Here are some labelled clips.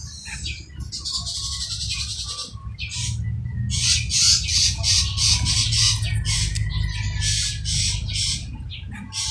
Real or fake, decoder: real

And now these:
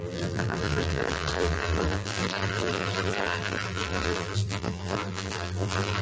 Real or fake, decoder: fake, vocoder, BigVGAN v2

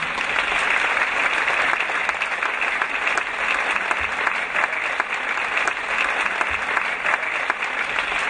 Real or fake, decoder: real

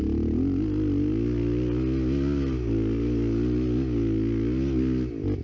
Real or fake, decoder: real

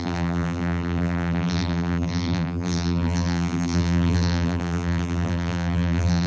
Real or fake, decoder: fake, vocoder, BigVGAN v2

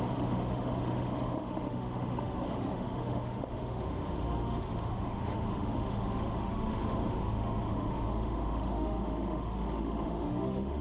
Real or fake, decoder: fake, autoencoder, DAC-VAE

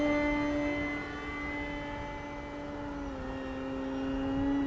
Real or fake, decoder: real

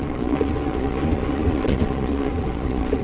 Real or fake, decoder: fake, vocoder, Vocos